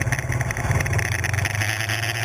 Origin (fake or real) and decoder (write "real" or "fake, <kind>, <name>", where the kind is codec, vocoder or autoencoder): real